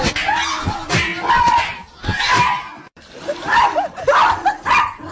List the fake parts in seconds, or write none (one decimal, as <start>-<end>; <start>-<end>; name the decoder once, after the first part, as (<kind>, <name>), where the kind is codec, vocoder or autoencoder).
1.1-4.2 (vocoder, BigVGAN v2)